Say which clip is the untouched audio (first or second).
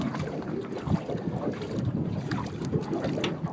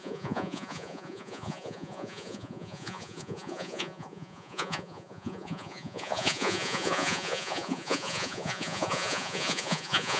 first